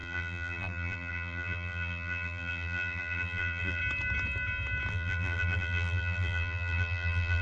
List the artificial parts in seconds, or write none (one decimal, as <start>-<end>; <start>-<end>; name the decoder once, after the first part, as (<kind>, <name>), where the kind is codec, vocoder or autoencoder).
0.0-3.8 (vocoder, BigVGAN v2); 4.9-7.4